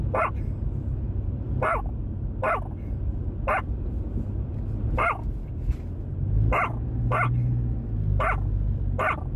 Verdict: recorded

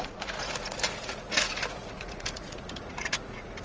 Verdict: remade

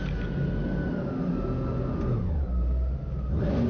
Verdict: recorded